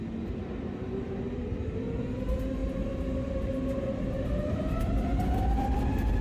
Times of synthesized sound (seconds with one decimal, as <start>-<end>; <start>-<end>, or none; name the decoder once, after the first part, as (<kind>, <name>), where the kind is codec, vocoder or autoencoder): none